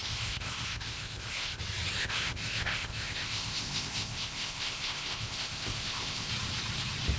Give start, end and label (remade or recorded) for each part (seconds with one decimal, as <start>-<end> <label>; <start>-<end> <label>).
0.0-1.6 remade; 1.6-2.0 recorded; 2.0-6.3 remade; 6.3-7.2 recorded